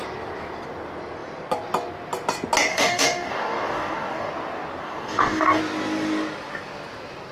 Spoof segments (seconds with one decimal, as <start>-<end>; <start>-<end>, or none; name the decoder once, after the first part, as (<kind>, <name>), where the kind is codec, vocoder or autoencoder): 2.7-4.3 (codec, DAC); 4.8-5.6